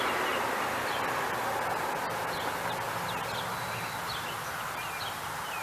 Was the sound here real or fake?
real